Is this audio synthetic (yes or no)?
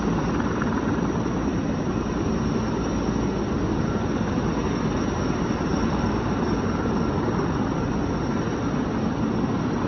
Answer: no